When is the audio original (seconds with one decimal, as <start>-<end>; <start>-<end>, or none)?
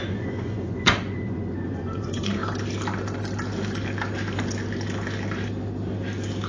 2.4-6.5